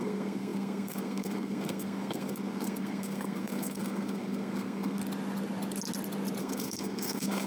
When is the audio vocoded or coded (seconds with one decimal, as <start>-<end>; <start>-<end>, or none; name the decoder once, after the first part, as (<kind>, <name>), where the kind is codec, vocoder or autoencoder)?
0.0-5.0 (codec, SNAC); 6.4-7.5